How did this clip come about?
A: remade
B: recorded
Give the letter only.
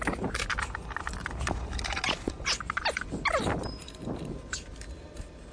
B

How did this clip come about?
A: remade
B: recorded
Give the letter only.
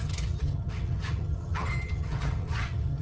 A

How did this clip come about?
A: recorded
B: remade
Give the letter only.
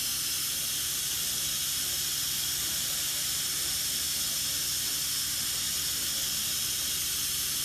A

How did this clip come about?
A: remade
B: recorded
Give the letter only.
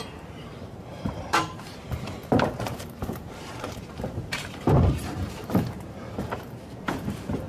A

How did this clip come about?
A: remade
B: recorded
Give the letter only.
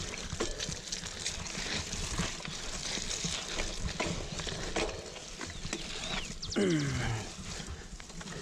B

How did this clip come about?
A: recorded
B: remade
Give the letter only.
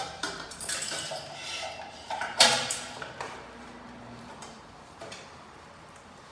B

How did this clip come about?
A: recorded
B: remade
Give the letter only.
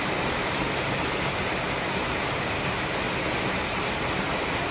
A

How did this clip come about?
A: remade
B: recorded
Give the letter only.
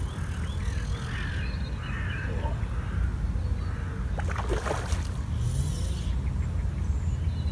B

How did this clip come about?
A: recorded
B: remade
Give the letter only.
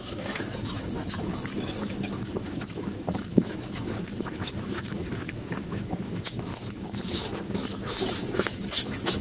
B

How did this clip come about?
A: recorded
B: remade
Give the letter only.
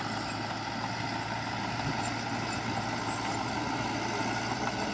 A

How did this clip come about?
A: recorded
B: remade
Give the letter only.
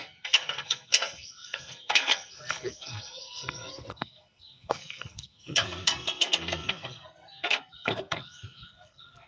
B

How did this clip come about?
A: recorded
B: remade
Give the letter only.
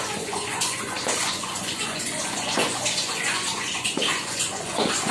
B